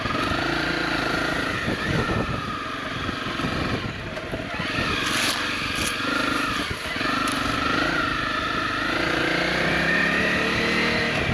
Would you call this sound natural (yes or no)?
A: yes